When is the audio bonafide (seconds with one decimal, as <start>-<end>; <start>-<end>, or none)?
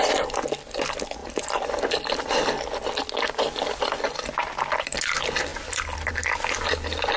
0.0-1.2; 2.3-5.5; 6.1-7.2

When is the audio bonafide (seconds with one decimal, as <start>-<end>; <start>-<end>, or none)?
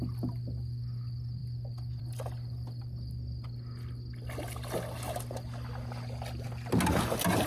0.0-7.5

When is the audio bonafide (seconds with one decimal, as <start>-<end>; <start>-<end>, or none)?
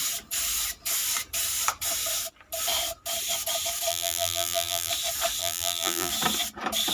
0.0-3.9; 4.9-5.4; 6.1-6.9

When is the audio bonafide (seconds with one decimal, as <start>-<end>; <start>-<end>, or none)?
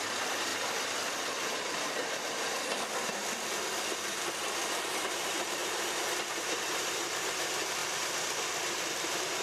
0.5-4.8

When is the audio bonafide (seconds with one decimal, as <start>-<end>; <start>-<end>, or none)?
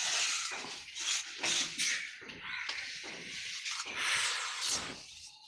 0.0-3.3; 4.5-5.5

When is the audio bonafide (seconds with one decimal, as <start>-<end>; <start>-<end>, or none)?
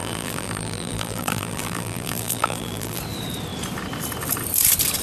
3.0-5.0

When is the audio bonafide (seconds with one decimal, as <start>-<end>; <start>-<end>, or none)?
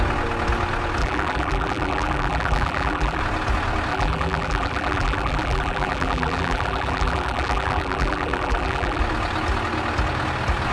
0.0-1.0; 3.2-3.9; 9.0-10.7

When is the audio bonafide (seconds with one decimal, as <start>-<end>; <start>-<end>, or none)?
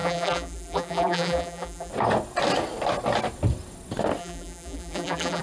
1.9-4.2